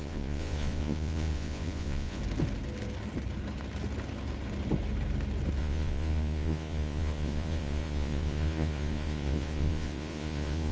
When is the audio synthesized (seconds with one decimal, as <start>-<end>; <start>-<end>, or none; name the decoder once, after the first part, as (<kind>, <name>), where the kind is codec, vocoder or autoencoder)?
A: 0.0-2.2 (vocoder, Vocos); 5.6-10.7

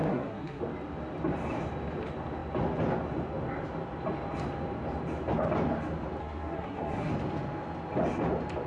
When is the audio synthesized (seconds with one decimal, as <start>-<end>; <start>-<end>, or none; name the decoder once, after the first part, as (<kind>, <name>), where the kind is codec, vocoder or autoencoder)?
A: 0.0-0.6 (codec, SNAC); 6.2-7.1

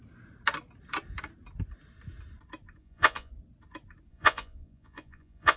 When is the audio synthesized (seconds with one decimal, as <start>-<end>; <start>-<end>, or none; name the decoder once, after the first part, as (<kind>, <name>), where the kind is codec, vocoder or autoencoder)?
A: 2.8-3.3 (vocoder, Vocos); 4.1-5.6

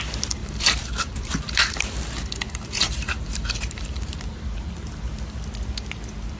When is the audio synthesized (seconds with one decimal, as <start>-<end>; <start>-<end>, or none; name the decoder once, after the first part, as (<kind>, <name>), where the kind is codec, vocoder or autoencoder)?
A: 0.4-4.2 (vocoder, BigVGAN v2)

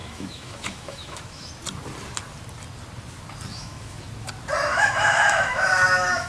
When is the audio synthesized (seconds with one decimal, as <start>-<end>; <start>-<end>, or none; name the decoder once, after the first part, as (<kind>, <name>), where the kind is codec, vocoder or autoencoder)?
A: 0.0-1.5 (autoencoder, DAC-VAE); 3.5-4.1; 4.7-6.3

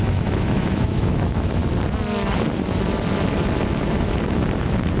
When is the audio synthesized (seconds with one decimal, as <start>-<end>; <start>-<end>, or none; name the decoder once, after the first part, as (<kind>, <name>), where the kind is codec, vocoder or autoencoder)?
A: 0.0-1.6 (autoencoder, DAC-VAE); 4.6-5.0